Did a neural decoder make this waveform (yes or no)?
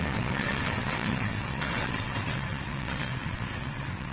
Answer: yes